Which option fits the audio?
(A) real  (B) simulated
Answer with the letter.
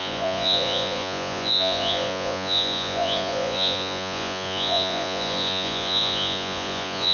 B